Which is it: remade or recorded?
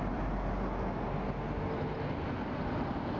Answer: recorded